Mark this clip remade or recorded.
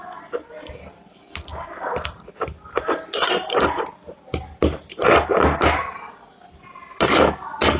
recorded